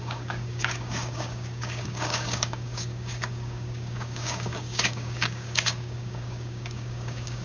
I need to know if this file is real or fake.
fake